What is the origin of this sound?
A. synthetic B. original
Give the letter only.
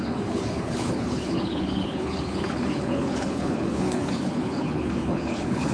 A